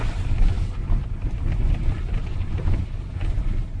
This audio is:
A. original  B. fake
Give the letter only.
A